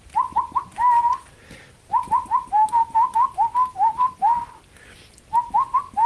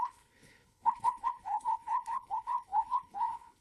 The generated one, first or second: second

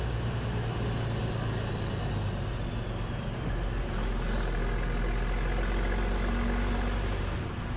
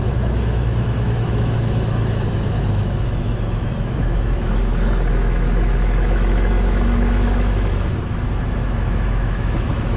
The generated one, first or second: second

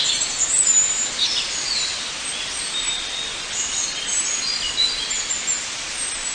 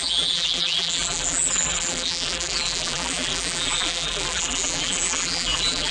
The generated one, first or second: second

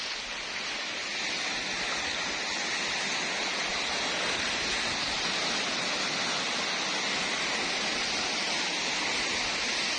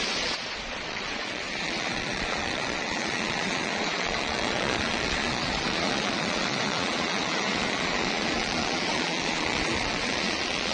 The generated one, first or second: second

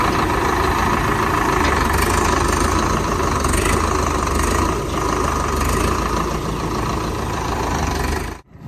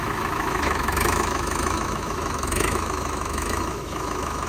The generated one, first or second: second